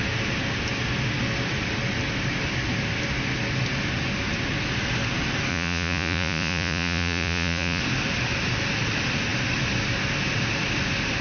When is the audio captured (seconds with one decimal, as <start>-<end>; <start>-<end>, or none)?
0.0-5.5; 7.8-11.2